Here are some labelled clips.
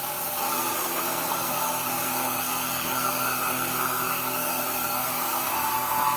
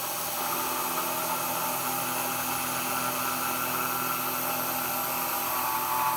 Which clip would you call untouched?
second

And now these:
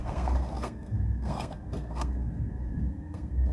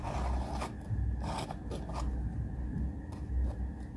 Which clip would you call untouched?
second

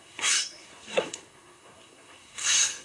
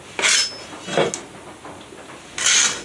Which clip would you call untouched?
second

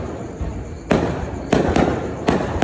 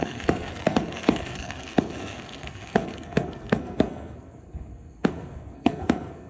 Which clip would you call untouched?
first